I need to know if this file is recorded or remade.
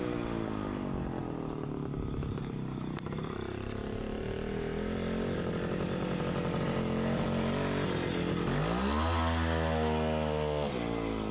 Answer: recorded